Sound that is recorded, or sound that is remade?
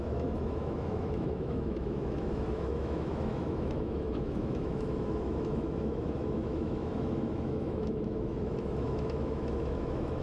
remade